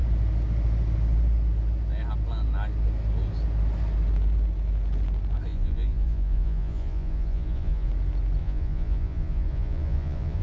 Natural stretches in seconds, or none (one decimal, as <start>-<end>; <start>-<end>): 0.0-5.5; 7.9-8.4